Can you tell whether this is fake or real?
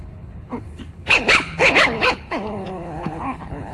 fake